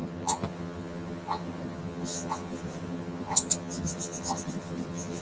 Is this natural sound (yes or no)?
no